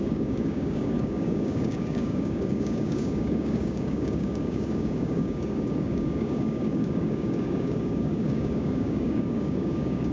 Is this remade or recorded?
remade